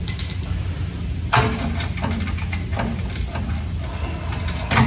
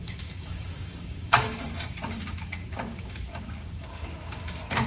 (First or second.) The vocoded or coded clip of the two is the second